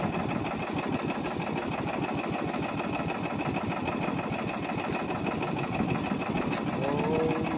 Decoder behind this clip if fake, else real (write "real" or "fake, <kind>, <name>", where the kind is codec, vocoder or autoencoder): real